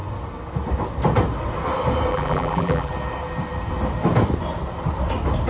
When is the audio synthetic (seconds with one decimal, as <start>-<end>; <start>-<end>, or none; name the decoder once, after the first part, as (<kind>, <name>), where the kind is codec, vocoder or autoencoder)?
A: 2.1-2.9 (vocoder, BigVGAN v2)